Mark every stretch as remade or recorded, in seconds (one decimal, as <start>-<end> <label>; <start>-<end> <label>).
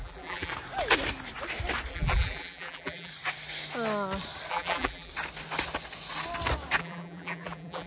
0.0-0.5 remade; 0.5-1.9 recorded; 1.9-3.1 remade; 3.1-4.5 recorded; 4.5-5.1 remade; 5.1-6.8 recorded; 6.8-7.9 remade